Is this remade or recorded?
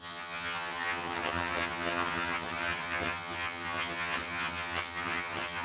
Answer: remade